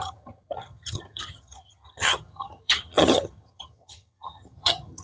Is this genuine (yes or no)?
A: no